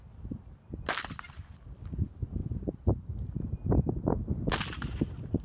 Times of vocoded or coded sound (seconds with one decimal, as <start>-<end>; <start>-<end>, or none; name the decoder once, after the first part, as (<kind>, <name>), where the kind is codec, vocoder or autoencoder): 2.4-3.3 (vocoder, BigVGAN v2)